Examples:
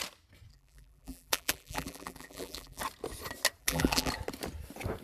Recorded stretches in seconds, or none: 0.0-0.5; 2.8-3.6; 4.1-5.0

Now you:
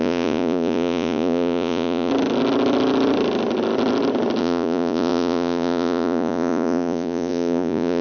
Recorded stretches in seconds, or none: 2.1-4.4

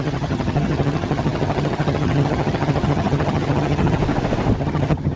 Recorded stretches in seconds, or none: 4.0-4.6

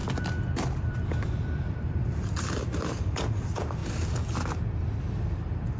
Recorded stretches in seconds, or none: 0.0-0.8; 3.8-5.0

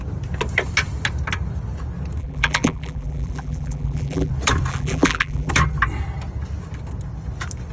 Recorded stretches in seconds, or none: 0.0-2.2; 4.3-4.7; 5.5-7.7

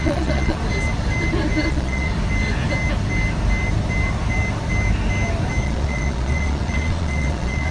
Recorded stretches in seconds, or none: 0.6-1.7; 2.1-5.6

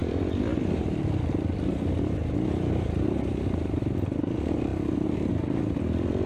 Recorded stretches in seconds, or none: 0.0-6.3